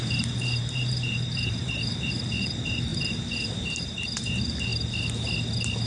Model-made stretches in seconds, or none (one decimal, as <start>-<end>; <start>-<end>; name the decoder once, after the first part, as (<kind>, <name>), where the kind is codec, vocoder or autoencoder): 0.0-4.7 (vocoder, BigVGAN v2)

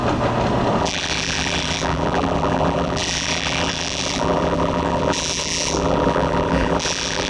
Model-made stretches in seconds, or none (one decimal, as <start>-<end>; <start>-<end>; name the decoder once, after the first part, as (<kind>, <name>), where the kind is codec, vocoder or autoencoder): 0.8-7.3 (vocoder, BigVGAN v2)

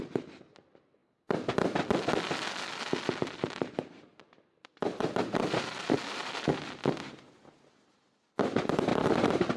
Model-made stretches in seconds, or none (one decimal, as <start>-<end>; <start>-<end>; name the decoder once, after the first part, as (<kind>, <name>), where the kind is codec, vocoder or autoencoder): 3.4-6.3 (vocoder, BigVGAN v2); 8.9-9.6